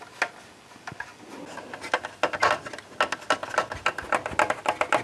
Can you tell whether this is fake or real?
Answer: real